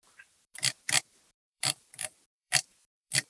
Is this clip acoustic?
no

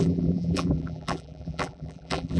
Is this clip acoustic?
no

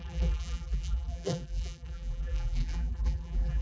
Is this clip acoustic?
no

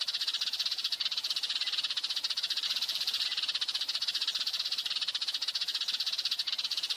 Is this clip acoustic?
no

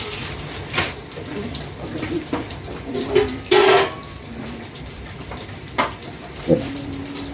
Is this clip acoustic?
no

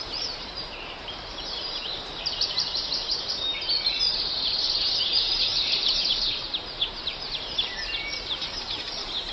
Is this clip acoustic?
no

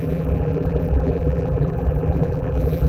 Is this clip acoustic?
no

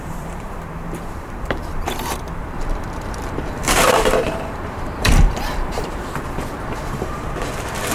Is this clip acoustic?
no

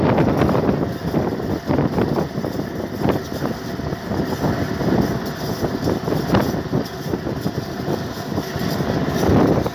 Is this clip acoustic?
yes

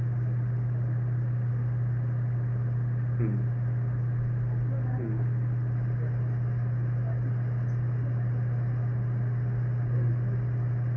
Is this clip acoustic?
yes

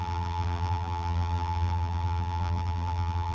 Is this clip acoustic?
no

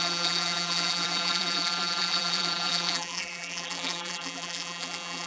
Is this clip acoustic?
no